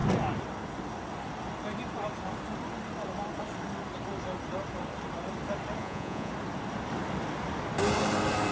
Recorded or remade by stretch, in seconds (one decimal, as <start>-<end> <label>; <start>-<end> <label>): 0.0-5.8 recorded; 5.8-6.3 remade; 6.3-8.5 recorded